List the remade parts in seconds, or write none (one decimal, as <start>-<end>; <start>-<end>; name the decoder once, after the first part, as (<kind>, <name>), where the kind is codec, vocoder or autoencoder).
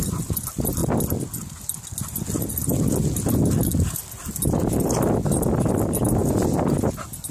none